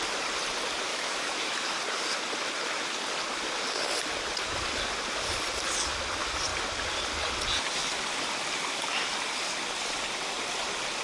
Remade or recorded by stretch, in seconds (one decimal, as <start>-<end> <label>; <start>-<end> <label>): 0.0-0.9 recorded; 0.9-1.7 remade; 1.7-11.0 recorded

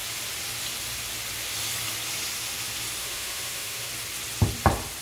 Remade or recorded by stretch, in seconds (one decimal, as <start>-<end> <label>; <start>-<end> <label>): 0.0-3.0 recorded; 3.0-3.9 remade; 3.9-5.0 recorded

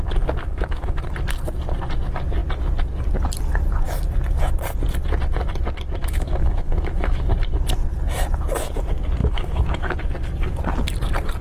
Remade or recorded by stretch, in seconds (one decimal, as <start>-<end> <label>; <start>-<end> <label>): 0.0-0.4 recorded; 0.4-1.0 remade; 1.0-6.0 recorded; 6.0-7.3 remade; 7.3-9.2 recorded; 9.2-10.0 remade; 10.0-11.4 recorded

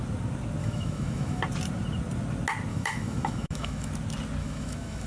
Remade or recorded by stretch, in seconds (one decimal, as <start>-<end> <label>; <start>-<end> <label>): 0.0-0.6 recorded; 0.6-1.4 remade; 1.4-2.7 recorded; 2.7-3.9 remade; 3.9-4.4 recorded; 4.4-5.1 remade

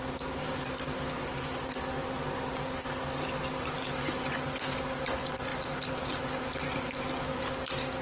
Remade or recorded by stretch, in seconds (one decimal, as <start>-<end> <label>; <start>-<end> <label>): 0.0-8.0 recorded

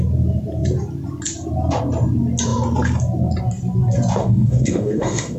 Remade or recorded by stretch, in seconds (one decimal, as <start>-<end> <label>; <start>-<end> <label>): 0.0-4.2 recorded; 4.2-5.4 remade

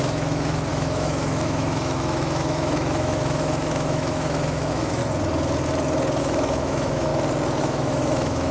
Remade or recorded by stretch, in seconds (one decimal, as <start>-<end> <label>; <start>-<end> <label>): 0.0-5.0 remade; 5.0-6.2 recorded; 6.2-7.1 remade; 7.1-7.6 recorded; 7.6-8.5 remade

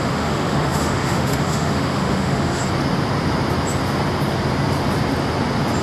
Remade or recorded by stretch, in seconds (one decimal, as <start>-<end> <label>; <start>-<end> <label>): 0.0-2.6 remade; 2.6-5.8 recorded